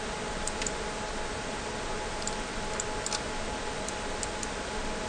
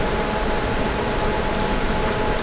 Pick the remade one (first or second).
second